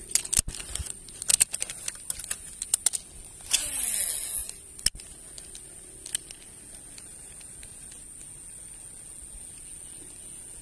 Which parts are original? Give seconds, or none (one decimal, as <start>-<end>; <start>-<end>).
0.0-10.6